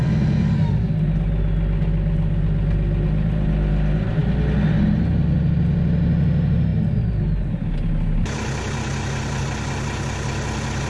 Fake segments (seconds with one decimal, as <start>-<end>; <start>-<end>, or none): none